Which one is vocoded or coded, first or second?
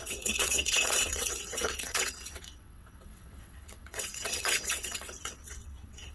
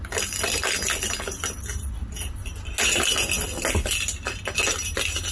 first